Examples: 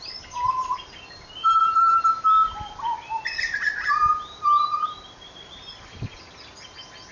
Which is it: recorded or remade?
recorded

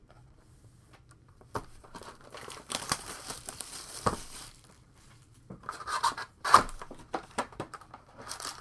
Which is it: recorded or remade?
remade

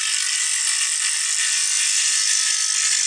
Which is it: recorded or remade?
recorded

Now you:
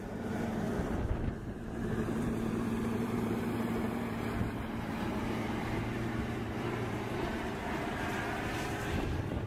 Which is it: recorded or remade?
remade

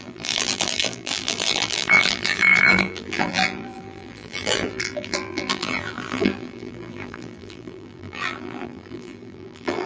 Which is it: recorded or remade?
remade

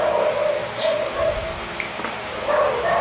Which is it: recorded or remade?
recorded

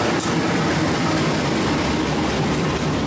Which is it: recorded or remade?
remade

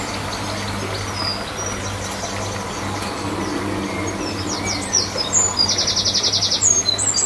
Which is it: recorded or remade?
recorded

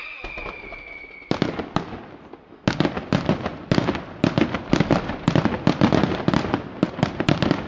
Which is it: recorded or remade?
recorded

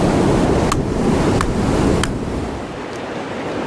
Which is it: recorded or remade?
recorded